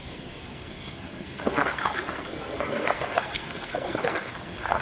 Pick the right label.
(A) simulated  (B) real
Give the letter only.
A